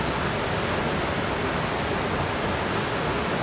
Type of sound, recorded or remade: recorded